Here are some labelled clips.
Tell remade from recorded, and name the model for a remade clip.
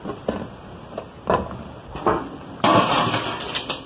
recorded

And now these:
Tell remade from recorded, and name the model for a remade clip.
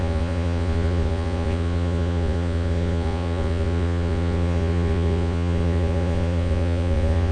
remade, vocoder, Vocos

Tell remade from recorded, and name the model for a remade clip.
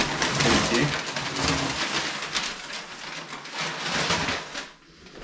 recorded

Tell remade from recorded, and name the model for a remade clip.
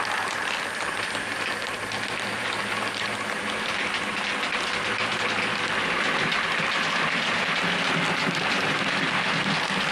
recorded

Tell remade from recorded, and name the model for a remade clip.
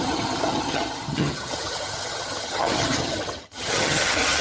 remade, vocoder, HiFi-GAN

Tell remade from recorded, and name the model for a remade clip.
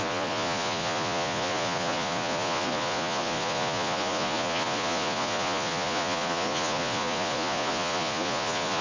remade, vocoder, Vocos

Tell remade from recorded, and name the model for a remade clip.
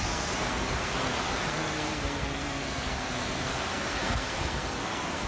remade, codec, SNAC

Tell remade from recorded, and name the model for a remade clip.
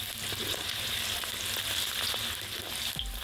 recorded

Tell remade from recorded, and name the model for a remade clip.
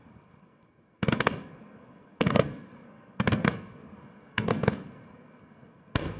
remade, codec, SNAC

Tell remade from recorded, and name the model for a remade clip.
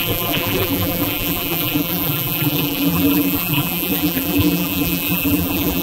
remade, vocoder, BigVGAN v2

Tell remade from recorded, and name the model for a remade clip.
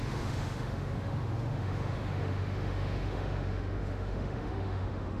remade, autoencoder, DAC-VAE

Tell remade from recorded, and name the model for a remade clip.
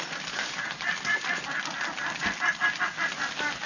recorded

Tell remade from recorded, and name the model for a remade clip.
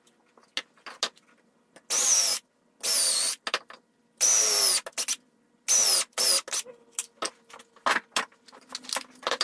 recorded